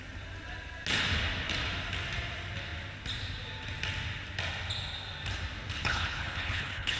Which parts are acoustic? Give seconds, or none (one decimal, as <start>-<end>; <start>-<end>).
0.0-5.8